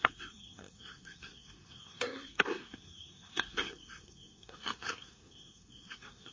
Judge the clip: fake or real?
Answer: fake